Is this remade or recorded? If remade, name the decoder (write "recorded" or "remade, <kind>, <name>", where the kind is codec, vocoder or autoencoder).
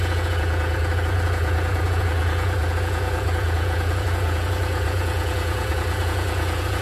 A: remade, vocoder, Vocos